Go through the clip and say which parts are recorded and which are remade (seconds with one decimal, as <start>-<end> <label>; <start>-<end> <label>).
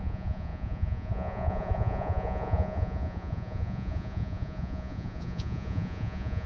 0.0-6.5 remade